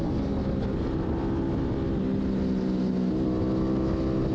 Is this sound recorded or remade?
recorded